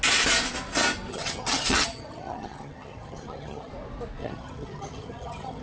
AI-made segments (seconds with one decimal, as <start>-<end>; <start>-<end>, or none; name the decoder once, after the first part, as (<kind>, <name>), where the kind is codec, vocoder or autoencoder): 1.1-3.7 (vocoder, HiFi-GAN); 4.2-5.6